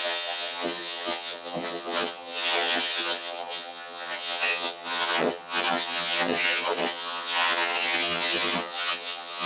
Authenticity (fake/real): fake